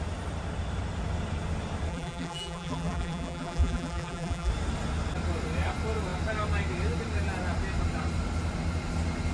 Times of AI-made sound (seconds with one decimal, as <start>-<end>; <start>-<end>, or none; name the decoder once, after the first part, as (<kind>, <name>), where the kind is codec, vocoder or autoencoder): 1.9-4.5 (vocoder, BigVGAN v2)